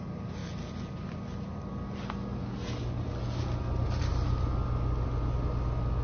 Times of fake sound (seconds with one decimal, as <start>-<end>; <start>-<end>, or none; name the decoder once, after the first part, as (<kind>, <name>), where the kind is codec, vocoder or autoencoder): none